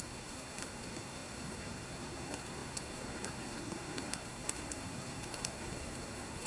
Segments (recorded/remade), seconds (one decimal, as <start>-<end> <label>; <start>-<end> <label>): 0.0-6.5 remade